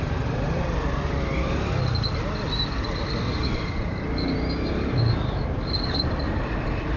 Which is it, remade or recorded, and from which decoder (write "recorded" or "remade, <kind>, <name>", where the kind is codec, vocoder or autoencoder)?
recorded